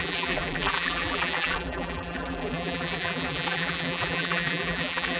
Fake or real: fake